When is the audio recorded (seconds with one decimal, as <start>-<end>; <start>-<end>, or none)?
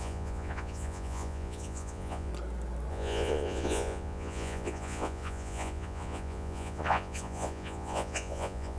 2.3-2.9